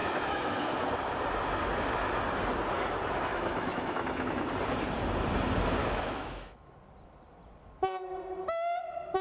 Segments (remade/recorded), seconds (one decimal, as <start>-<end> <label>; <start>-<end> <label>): 0.0-0.9 remade; 0.9-3.3 recorded; 3.3-4.5 remade; 4.5-5.8 recorded; 5.8-6.7 remade; 6.7-9.2 recorded